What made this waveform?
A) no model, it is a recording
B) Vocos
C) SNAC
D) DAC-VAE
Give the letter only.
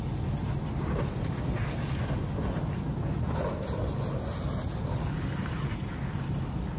A